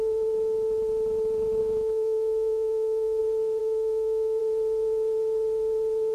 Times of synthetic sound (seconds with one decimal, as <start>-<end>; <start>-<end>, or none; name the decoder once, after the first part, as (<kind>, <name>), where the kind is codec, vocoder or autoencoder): 1.6-3.2 (autoencoder, DAC-VAE); 3.6-4.4